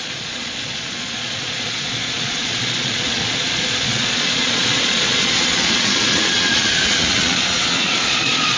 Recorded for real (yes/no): no